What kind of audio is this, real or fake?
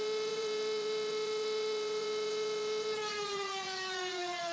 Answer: fake